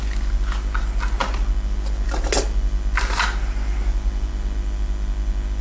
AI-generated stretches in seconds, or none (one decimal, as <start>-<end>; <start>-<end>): none